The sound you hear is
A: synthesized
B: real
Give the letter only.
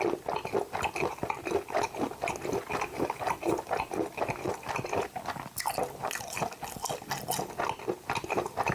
B